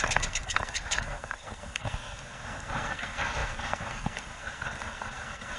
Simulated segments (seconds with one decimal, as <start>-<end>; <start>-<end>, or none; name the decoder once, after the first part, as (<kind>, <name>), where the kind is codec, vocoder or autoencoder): 0.0-5.6 (codec, SNAC)